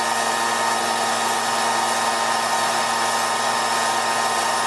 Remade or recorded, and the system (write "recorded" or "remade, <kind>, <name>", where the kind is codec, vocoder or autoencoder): recorded